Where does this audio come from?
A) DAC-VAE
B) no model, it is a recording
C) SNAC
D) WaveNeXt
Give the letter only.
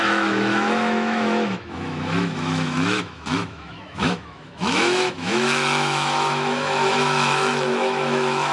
A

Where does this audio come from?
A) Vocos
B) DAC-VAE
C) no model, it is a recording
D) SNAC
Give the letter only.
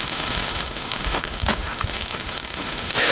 B